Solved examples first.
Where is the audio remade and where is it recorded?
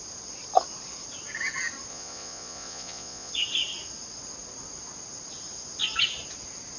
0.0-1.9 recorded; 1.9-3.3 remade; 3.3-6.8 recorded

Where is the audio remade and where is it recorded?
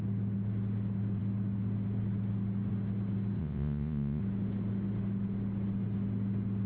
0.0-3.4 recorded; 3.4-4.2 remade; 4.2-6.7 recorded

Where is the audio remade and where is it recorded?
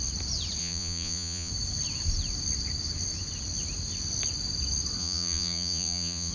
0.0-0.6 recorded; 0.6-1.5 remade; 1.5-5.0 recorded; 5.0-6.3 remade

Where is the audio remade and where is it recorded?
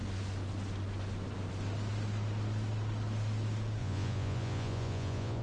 0.0-3.8 recorded; 3.8-5.4 remade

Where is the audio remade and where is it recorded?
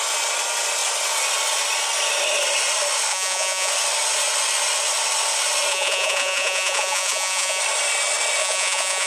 0.0-3.1 recorded; 3.1-3.7 remade; 3.7-5.7 recorded; 5.7-7.6 remade; 7.6-8.4 recorded; 8.4-9.1 remade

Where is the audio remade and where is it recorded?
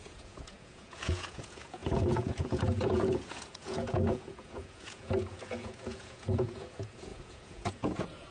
0.0-8.3 remade